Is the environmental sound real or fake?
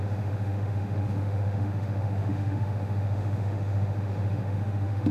fake